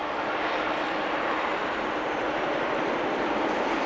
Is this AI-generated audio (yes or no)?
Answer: no